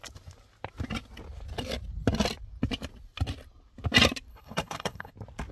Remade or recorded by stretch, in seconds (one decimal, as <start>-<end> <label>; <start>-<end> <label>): 0.0-4.3 recorded; 4.3-5.1 remade; 5.1-5.5 recorded